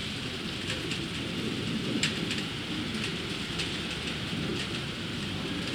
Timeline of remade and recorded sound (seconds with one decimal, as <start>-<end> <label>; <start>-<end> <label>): 0.0-2.5 remade; 2.5-3.1 recorded; 3.1-3.8 remade; 3.8-4.5 recorded; 4.5-5.3 remade; 5.3-5.7 recorded